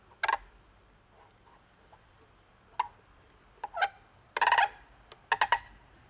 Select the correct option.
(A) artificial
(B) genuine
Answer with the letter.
B